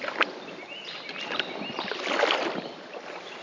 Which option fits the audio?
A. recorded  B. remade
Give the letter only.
A